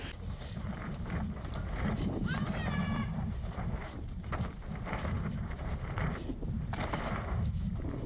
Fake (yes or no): yes